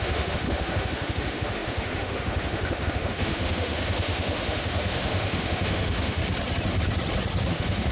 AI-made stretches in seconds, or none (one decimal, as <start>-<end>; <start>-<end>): 0.0-6.2; 7.5-7.9